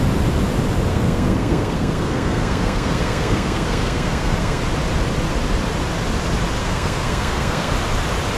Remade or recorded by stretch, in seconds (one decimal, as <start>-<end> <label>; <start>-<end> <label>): 0.0-0.9 recorded; 0.9-4.6 remade; 4.6-6.6 recorded; 6.6-7.7 remade; 7.7-8.4 recorded